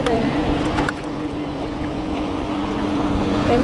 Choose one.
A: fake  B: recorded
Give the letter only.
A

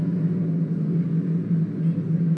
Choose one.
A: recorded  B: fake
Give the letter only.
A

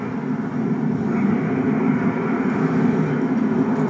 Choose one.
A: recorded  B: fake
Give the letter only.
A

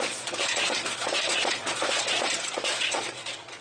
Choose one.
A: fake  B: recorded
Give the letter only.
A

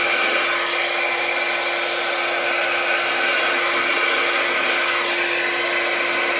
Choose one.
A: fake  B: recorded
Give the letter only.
B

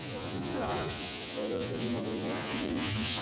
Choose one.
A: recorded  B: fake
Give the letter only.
B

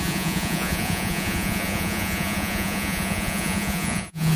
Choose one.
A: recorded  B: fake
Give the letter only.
B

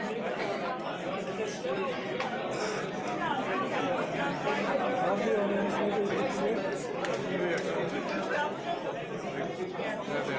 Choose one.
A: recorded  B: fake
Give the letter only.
A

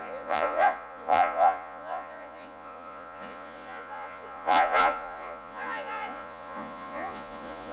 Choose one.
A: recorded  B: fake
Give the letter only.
B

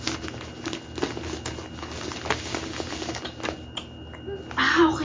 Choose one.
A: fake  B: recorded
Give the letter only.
B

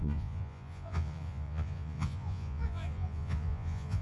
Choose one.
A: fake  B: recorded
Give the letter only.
A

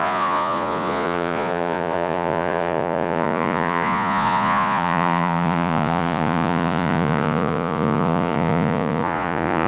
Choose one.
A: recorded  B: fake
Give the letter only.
B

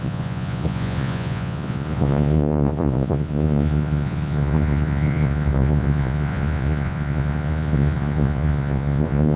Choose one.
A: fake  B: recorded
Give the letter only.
A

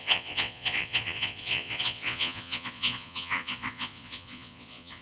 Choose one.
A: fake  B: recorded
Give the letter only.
A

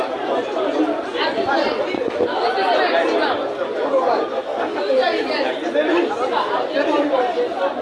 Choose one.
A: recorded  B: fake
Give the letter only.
A